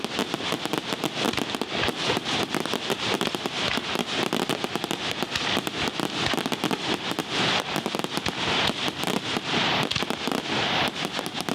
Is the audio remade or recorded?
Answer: recorded